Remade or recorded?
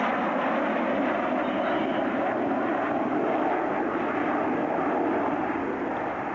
recorded